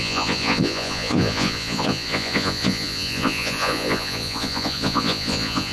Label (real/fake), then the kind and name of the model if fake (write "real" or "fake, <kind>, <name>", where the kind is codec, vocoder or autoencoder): fake, vocoder, Vocos